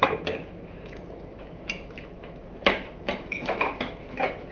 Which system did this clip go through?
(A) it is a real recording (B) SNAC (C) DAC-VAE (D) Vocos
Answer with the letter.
C